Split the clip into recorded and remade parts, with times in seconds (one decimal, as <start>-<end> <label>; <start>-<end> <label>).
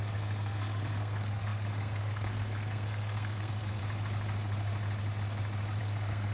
0.0-3.8 remade; 3.8-5.8 recorded; 5.8-6.3 remade